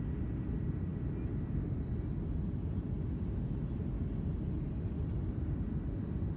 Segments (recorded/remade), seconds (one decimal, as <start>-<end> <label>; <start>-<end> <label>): 0.0-6.4 recorded

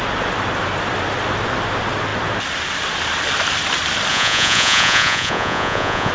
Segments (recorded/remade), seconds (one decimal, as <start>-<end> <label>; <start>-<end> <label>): 0.0-4.1 recorded; 4.1-6.1 remade

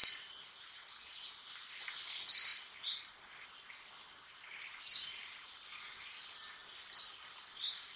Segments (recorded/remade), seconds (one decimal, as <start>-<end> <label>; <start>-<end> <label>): 0.0-8.0 recorded

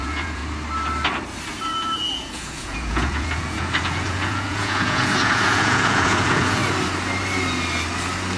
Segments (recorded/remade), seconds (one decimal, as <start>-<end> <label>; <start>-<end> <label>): 0.0-0.4 remade; 0.4-2.1 recorded; 2.1-6.6 remade; 6.6-8.4 recorded

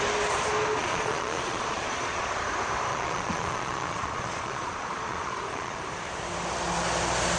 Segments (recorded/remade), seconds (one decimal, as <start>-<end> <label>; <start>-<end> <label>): 0.0-0.8 recorded; 0.8-2.4 remade; 2.4-2.9 recorded; 2.9-5.8 remade; 5.8-7.4 recorded

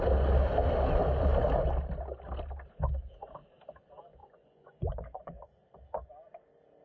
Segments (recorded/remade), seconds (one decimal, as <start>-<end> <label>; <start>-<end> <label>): 0.0-4.2 recorded; 4.2-5.4 remade; 5.4-6.8 recorded